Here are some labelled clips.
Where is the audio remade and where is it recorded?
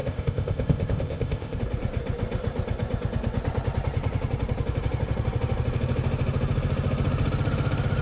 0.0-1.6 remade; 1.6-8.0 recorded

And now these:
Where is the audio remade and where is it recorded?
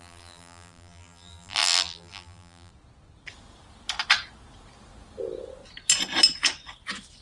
0.0-2.7 remade; 2.7-7.2 recorded